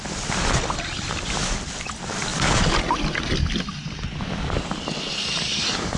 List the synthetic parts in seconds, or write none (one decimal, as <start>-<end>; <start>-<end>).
none